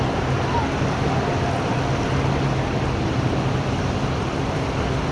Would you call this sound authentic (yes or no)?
yes